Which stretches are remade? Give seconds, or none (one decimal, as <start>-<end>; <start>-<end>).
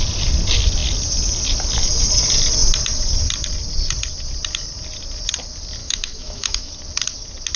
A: 5.8-6.7